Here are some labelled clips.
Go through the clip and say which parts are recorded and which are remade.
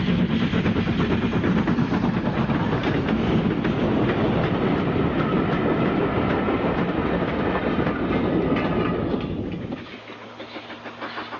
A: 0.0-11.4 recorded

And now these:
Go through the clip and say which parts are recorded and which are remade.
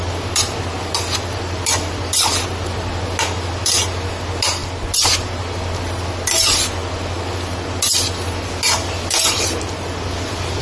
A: 0.0-10.6 recorded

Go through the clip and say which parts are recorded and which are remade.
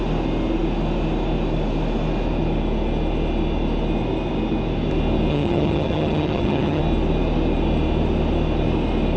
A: 0.0-5.3 recorded; 5.3-6.8 remade; 6.8-9.2 recorded